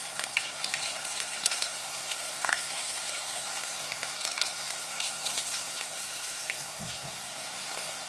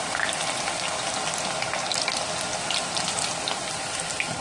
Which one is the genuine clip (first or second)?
second